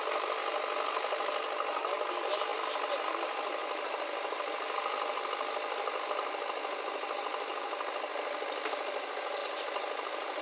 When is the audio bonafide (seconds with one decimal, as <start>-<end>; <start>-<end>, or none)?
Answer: 0.0-10.4